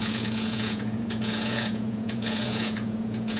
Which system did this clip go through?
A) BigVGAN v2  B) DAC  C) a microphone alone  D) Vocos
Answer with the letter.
D